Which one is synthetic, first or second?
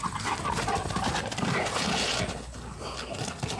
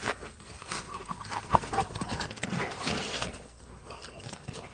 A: second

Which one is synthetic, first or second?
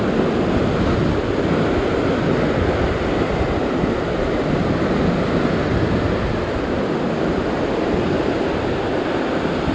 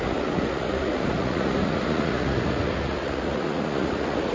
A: second